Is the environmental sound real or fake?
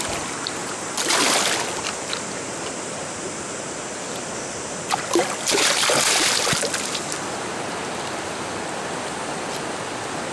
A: real